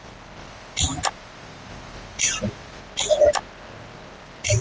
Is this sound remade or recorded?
recorded